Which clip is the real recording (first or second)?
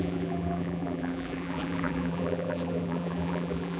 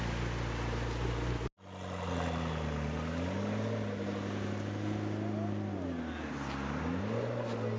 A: second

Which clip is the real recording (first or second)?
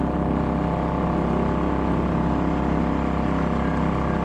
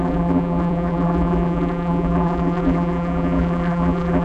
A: first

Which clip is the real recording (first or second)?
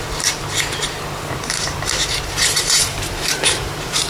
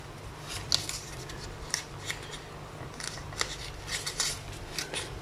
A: second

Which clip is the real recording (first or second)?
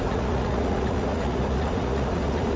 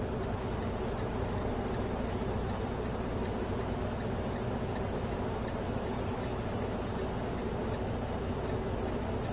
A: second